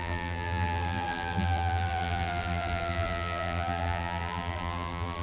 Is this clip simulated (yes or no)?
yes